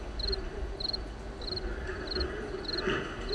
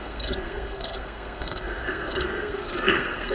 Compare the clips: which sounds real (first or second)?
first